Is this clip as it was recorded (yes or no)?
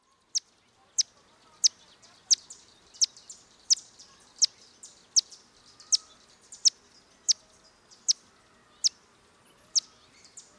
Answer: yes